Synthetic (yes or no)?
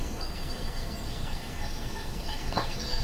yes